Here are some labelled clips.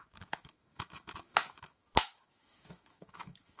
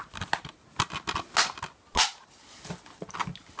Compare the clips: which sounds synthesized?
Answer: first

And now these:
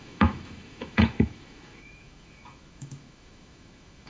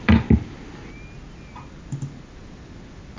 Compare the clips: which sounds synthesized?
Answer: first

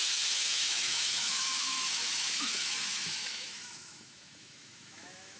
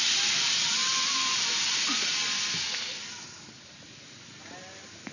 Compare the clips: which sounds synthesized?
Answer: first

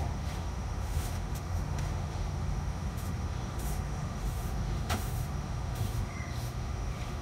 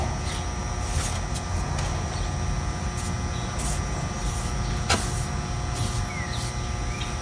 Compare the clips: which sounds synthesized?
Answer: first